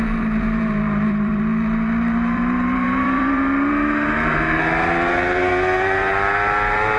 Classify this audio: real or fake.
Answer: fake